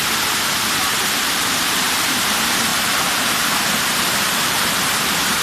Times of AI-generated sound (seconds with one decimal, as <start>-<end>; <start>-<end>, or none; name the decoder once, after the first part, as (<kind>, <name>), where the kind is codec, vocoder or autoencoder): 0.0-5.4 (vocoder, BigVGAN v2)